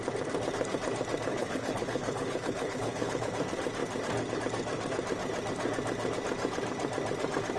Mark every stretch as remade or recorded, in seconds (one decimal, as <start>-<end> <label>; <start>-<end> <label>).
0.0-1.3 recorded; 1.3-3.3 remade; 3.3-7.6 recorded